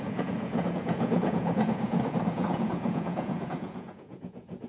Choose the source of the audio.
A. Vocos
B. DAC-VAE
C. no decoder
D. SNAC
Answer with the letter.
A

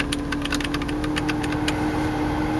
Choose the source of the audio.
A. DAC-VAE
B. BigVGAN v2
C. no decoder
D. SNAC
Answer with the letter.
C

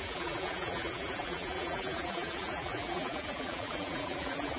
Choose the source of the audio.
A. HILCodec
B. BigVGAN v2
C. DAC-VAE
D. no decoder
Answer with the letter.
B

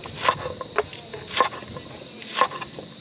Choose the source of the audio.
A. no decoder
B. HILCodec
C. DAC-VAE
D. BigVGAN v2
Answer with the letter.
A